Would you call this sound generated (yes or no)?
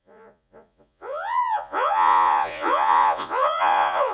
yes